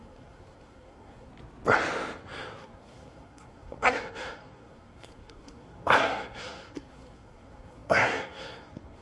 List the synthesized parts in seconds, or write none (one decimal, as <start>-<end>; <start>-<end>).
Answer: 0.0-1.3; 2.6-9.0